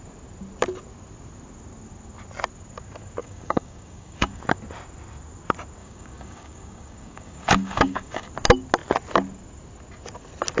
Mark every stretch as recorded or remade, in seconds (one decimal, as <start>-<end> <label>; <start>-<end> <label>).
0.0-3.2 recorded; 3.2-4.4 remade; 4.4-5.8 recorded; 5.8-8.3 remade; 8.3-10.6 recorded